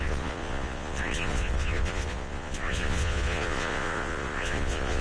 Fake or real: fake